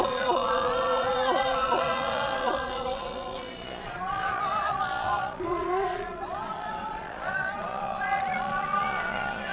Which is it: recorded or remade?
remade